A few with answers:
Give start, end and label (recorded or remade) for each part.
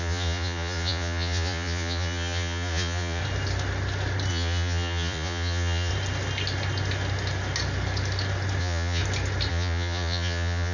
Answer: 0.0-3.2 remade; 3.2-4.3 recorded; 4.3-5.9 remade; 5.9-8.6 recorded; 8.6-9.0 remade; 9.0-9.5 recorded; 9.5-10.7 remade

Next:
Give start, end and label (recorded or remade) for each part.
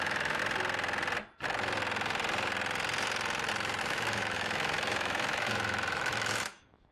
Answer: 0.0-0.4 remade; 0.4-3.8 recorded; 3.8-6.9 remade